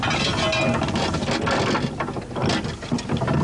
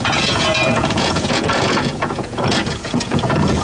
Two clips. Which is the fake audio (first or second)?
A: second